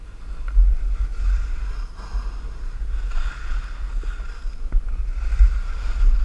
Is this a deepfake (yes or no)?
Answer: no